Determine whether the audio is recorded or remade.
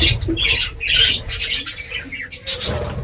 recorded